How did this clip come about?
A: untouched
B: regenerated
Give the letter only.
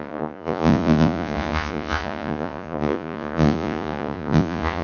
B